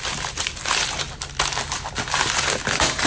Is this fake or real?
real